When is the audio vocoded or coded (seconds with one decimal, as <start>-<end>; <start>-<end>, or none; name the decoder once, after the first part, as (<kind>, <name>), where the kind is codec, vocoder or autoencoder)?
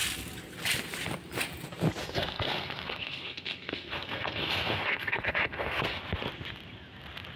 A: 2.0-6.0 (codec, SNAC)